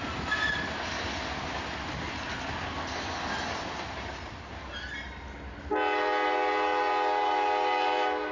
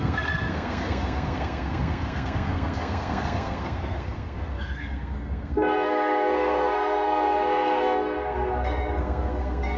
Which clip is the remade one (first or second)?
second